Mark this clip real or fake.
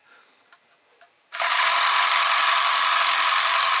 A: real